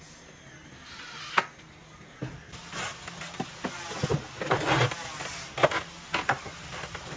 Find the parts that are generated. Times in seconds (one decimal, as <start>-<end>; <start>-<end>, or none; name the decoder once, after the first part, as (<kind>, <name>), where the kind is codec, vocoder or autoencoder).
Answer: none